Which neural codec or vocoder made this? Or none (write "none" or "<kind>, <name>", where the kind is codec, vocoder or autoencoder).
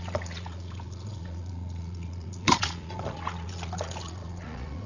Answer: vocoder, Vocos